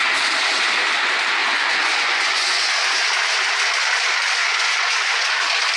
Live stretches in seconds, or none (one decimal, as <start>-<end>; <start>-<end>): 0.0-1.4; 2.7-4.4; 5.3-5.8